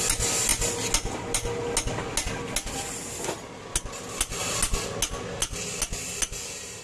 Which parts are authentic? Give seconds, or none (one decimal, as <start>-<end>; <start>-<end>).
0.0-6.8